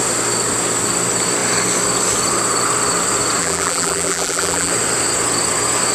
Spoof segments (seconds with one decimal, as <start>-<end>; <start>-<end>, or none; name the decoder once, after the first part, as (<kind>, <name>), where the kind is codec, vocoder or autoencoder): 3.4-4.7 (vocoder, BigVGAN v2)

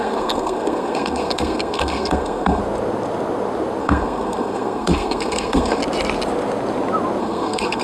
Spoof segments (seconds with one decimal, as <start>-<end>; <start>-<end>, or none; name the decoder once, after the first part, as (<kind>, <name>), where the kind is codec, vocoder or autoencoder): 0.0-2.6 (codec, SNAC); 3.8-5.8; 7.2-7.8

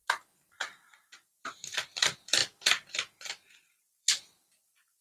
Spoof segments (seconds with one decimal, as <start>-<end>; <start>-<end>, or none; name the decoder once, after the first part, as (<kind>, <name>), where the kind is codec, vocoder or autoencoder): 2.4-4.2 (vocoder, BigVGAN v2)

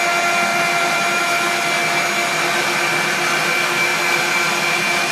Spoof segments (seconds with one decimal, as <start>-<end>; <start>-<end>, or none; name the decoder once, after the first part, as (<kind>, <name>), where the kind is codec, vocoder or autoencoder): 0.5-1.2 (vocoder, BigVGAN v2)

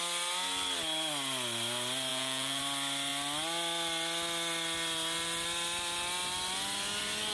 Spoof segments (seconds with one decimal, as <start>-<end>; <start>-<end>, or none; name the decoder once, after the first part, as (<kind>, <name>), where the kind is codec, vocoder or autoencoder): 2.1-2.6 (vocoder, Vocos)

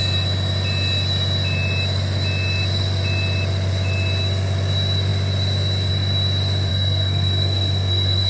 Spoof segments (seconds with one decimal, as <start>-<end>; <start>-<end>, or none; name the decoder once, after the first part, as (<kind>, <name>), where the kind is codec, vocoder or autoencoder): 6.7-8.3 (codec, SNAC)

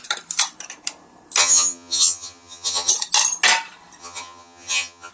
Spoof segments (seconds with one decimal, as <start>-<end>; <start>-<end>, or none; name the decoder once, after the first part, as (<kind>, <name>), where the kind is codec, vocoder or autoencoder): 1.4-2.9 (vocoder, HiFi-GAN); 4.0-5.1

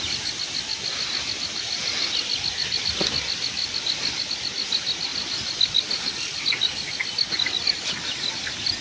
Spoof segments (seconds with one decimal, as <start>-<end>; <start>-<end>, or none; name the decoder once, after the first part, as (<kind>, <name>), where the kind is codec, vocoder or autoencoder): none